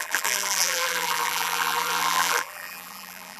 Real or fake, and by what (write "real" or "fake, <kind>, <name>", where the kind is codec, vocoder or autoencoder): fake, vocoder, BigVGAN v2